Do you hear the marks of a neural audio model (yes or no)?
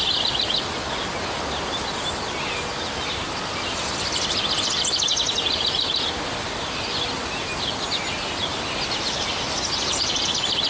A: no